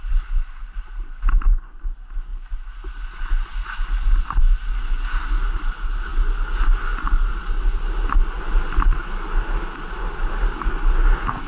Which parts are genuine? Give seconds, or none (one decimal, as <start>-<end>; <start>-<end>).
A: 0.0-11.5